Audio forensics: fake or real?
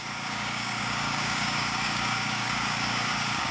fake